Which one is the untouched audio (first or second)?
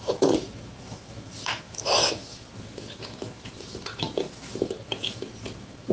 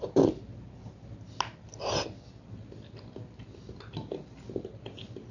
second